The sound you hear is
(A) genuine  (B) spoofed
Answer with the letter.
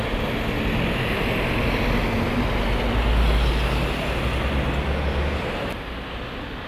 A